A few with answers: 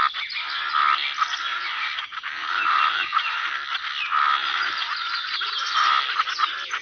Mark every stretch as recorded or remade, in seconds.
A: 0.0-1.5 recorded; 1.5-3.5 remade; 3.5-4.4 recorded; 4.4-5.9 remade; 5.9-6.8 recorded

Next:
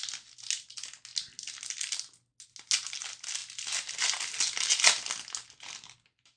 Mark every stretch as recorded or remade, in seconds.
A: 0.0-6.4 recorded

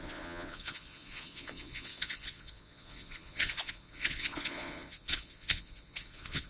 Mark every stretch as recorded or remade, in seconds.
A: 0.0-6.5 remade

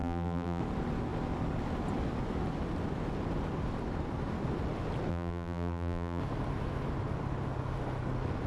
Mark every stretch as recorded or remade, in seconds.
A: 0.0-0.6 remade; 0.6-5.1 recorded; 5.1-6.2 remade; 6.2-8.5 recorded